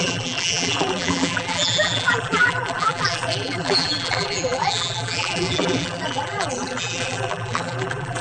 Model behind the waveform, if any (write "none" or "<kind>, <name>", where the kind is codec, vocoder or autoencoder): vocoder, BigVGAN v2